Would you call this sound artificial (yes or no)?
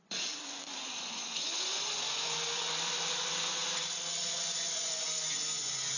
yes